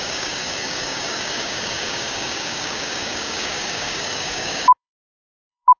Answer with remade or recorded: remade